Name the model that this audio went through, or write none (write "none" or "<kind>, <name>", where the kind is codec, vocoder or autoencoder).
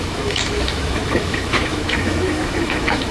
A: autoencoder, DAC-VAE